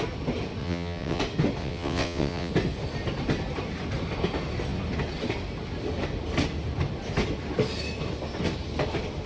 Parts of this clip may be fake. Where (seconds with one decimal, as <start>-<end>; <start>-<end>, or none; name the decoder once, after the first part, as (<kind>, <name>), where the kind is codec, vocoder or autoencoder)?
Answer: 0.6-1.2 (vocoder, WaveNeXt); 1.6-2.5